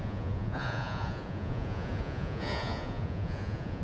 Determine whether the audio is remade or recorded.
remade